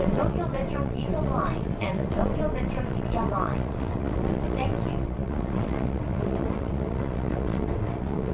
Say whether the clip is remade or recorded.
remade